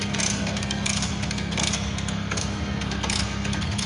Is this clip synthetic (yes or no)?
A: yes